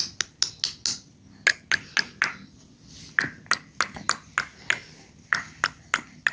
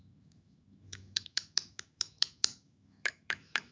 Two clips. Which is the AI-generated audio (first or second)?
second